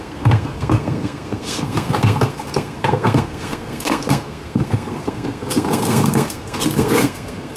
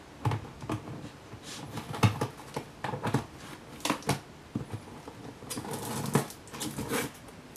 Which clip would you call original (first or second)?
second